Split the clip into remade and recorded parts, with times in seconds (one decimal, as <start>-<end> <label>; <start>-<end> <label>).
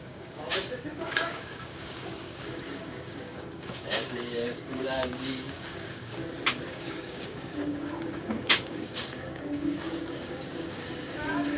0.0-6.2 remade; 6.2-6.7 recorded; 6.7-11.6 remade